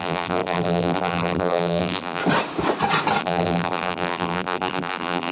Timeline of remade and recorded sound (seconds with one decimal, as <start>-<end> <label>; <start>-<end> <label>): 0.0-2.2 remade; 2.2-3.2 recorded; 3.2-5.3 remade